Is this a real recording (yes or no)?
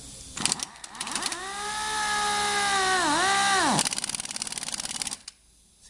yes